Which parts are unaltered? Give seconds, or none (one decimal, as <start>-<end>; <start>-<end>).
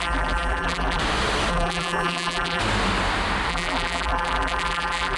1.0-1.5; 2.6-3.5